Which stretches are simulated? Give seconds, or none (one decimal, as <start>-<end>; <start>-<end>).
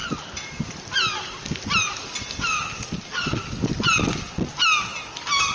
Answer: none